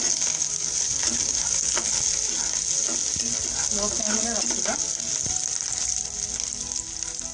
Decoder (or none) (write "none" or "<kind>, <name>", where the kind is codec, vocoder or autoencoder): none